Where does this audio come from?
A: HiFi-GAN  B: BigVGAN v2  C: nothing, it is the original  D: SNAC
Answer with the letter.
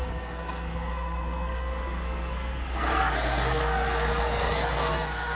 D